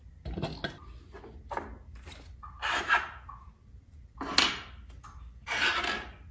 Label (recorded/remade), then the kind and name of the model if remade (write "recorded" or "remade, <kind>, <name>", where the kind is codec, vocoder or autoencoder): recorded